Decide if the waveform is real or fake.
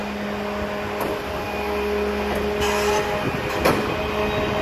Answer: real